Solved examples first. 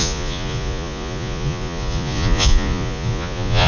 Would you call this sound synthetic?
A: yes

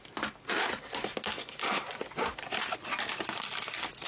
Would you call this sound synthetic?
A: no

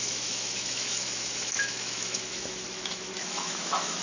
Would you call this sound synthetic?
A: yes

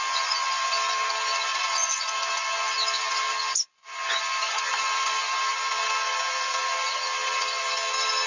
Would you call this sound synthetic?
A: no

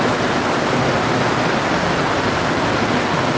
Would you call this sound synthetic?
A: no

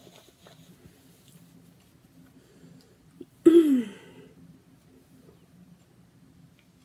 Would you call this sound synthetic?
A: no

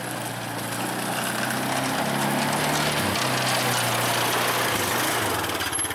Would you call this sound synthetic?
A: no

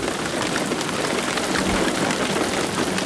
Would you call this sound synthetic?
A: no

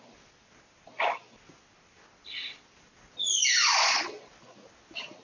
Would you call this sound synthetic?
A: no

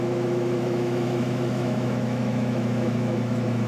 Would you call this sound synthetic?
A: yes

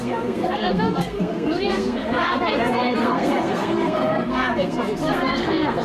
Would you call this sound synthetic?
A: yes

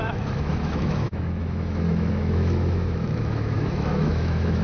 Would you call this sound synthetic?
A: yes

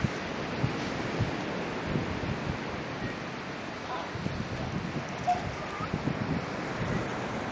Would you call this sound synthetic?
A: no